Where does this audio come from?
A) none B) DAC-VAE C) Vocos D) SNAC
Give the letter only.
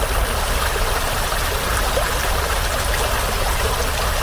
A